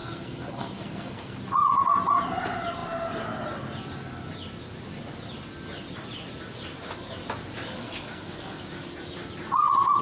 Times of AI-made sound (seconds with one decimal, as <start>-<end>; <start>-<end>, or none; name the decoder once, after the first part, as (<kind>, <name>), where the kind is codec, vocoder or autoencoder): 0.0-1.4 (codec, SNAC); 7.8-8.6